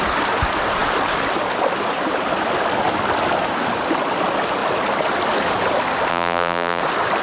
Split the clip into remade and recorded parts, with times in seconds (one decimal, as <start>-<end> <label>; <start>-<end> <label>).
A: 0.0-6.1 recorded; 6.1-6.8 remade; 6.8-7.2 recorded